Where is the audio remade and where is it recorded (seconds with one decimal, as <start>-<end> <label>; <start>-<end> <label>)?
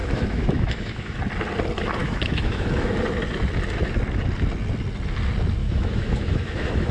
0.0-1.2 remade; 1.2-2.0 recorded; 2.0-2.9 remade; 2.9-5.6 recorded; 5.6-6.9 remade